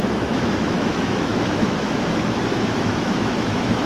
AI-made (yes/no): yes